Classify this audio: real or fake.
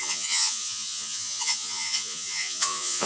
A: fake